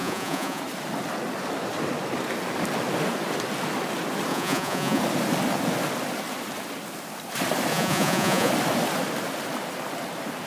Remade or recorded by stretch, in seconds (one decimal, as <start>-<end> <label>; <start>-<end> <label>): 0.0-0.6 remade; 0.6-4.3 recorded; 4.3-5.0 remade; 5.0-7.7 recorded; 7.7-8.5 remade; 8.5-10.5 recorded